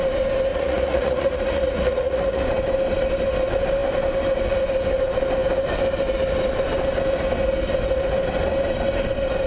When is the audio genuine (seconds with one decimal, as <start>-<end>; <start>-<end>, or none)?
0.0-0.5; 2.4-9.5

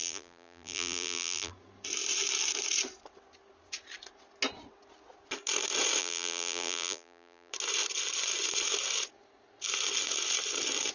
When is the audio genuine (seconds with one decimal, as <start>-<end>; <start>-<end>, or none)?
1.5-6.0; 7.5-10.9

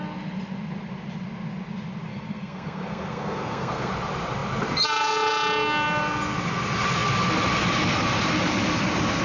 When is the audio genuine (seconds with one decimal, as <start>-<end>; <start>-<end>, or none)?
0.0-2.1; 3.9-9.2

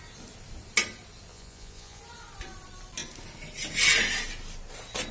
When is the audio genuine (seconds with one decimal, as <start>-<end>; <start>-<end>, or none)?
0.0-1.3; 2.0-5.1

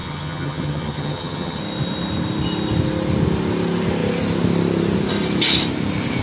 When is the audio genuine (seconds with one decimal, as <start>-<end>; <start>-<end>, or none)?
1.6-6.2

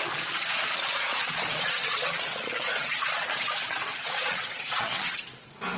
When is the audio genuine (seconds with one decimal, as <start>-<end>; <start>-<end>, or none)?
5.1-5.8

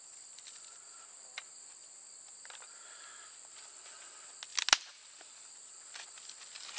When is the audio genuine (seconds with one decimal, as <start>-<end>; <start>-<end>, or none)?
0.0-6.8